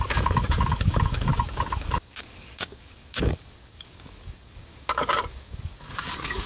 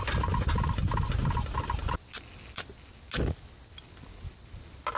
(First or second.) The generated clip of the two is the first